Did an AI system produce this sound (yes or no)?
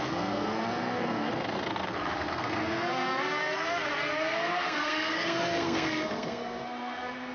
yes